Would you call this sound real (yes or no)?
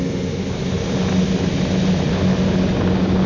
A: yes